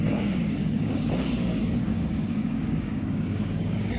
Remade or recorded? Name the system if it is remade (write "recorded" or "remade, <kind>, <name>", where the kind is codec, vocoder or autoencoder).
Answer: remade, codec, DAC